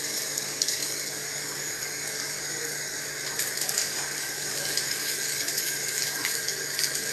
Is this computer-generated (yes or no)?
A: yes